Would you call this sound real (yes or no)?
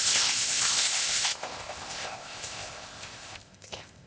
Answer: no